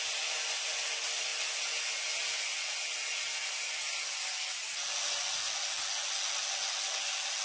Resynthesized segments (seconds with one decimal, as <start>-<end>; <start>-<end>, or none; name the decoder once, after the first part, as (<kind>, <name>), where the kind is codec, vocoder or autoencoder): none